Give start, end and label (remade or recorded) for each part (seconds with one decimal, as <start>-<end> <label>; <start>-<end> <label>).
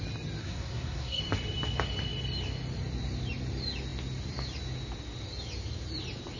0.0-0.4 recorded; 0.4-1.2 remade; 1.2-6.4 recorded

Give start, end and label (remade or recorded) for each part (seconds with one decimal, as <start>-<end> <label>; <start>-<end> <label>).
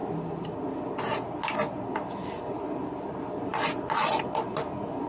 0.0-5.1 recorded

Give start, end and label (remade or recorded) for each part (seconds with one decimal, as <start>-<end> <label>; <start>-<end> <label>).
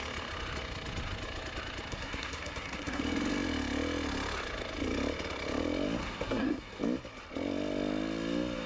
0.0-1.9 recorded; 1.9-3.0 remade; 3.0-6.0 recorded; 6.0-6.8 remade; 6.8-8.7 recorded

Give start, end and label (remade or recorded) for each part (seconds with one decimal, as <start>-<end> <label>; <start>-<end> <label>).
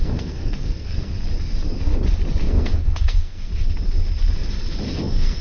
0.0-1.1 remade; 1.1-2.4 recorded; 2.4-3.5 remade; 3.5-5.0 recorded; 5.0-5.4 remade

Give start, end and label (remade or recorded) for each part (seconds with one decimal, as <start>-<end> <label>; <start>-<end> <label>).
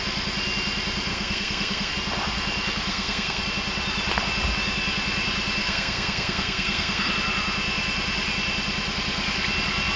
0.0-1.1 recorded; 1.1-1.9 remade; 1.9-2.9 recorded; 2.9-3.4 remade; 3.4-5.6 recorded; 5.6-7.1 remade; 7.1-10.0 recorded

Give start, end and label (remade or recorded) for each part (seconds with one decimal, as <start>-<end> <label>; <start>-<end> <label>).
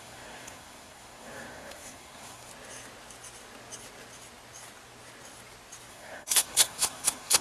0.0-2.5 remade; 2.5-5.9 recorded; 5.9-7.4 remade